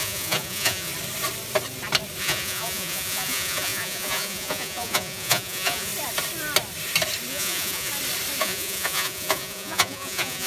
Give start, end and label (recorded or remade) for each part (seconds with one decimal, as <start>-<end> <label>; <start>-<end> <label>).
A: 0.0-0.9 remade; 0.9-2.2 recorded; 2.2-5.9 remade; 5.9-7.3 recorded; 7.3-7.9 remade; 7.9-8.4 recorded; 8.4-10.5 remade